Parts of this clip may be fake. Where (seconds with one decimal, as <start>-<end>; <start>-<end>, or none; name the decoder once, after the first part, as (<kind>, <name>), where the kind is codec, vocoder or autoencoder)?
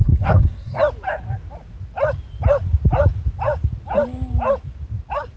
0.0-0.8 (codec, SNAC)